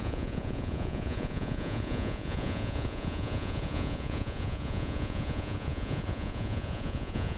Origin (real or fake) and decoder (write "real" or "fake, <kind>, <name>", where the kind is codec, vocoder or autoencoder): fake, vocoder, Vocos